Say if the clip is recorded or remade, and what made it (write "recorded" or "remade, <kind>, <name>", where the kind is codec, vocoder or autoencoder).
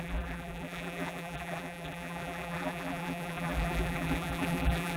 remade, vocoder, BigVGAN v2